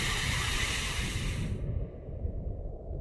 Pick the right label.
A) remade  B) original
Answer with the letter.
B